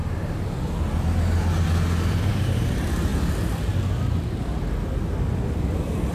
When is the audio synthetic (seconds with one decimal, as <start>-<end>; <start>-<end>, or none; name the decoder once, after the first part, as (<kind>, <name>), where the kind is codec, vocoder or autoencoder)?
none